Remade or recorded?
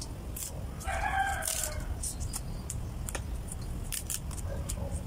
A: recorded